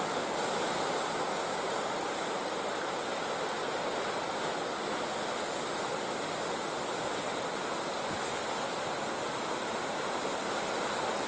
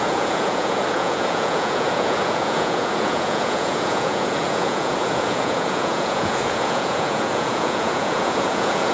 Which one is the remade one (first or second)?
second